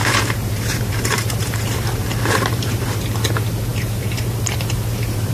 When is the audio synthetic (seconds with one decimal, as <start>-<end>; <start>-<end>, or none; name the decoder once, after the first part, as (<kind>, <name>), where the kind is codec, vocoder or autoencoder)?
0.0-3.1 (vocoder, BigVGAN v2); 3.7-5.3